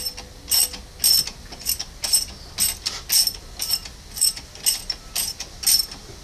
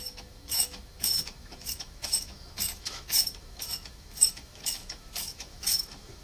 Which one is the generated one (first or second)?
second